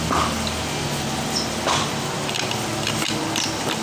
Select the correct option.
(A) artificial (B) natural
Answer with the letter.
B